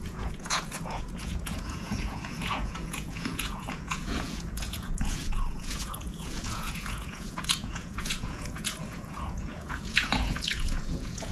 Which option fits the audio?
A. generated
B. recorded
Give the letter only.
A